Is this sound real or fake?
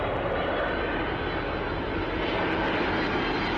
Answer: real